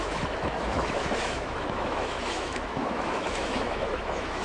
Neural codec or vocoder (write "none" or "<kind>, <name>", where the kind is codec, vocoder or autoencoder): autoencoder, DAC-VAE